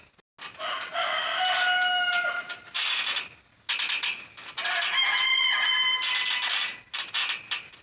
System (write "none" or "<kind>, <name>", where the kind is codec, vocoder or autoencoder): none